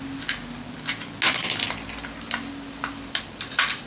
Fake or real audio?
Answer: real